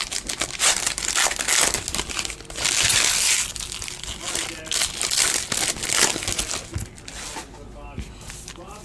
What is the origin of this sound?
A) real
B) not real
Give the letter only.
A